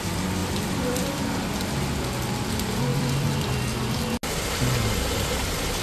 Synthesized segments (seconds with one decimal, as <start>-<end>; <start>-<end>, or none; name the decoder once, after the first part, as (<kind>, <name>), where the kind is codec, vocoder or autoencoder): 0.4-1.2 (vocoder, BigVGAN v2); 2.9-3.9